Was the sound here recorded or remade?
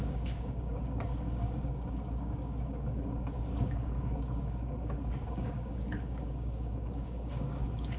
remade